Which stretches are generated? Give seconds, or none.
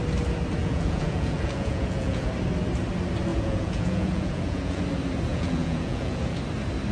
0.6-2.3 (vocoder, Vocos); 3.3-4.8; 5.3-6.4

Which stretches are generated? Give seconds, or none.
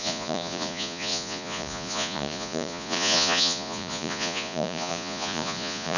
0.0-6.0 (vocoder, Vocos)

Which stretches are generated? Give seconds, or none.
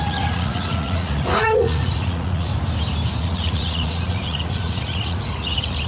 0.0-2.5 (vocoder, Vocos); 3.2-5.9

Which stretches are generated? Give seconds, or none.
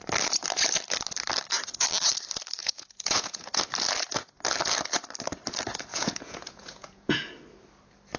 2.6-3.6 (vocoder, Vocos); 5.9-7.3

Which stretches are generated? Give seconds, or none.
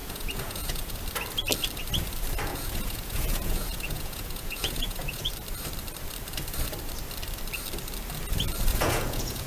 0.0-1.0 (vocoder, Vocos); 2.5-5.3; 8.7-9.5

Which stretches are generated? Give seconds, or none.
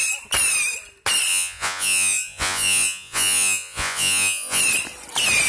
1.3-4.6 (vocoder, Vocos)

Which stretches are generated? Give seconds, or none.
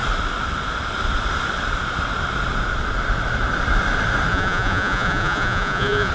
4.3-6.1 (vocoder, Vocos)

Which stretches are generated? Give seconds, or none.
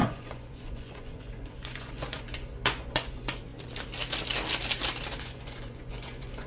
0.0-3.5 (vocoder, Vocos); 5.2-6.5